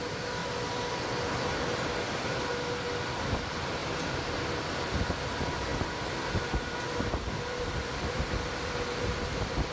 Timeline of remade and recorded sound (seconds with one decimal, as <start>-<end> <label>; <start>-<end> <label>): 0.0-5.7 remade; 5.7-6.5 recorded; 6.5-9.7 remade